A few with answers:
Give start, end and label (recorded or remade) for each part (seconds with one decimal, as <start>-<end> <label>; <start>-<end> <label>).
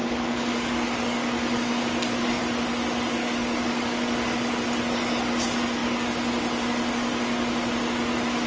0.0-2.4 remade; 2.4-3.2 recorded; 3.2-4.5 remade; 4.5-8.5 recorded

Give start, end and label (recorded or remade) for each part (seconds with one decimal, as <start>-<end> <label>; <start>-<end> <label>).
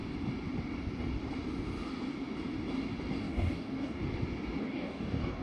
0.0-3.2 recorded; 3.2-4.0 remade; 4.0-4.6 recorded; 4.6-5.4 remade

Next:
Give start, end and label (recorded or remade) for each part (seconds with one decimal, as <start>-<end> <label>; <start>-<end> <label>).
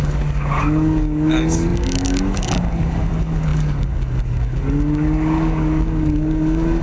0.0-6.8 remade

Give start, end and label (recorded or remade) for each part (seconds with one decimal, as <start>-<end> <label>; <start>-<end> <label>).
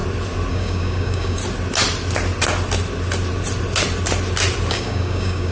0.0-0.5 recorded; 0.5-1.4 remade; 1.4-4.7 recorded; 4.7-5.5 remade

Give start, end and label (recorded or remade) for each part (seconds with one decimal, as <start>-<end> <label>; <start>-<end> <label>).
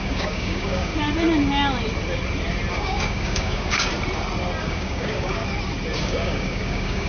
0.0-0.9 remade; 0.9-2.7 recorded; 2.7-3.9 remade; 3.9-4.6 recorded; 4.6-5.4 remade; 5.4-6.0 recorded; 6.0-7.1 remade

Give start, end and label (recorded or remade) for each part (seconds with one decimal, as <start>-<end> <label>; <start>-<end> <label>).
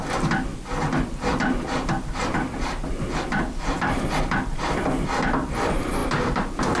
0.0-6.8 recorded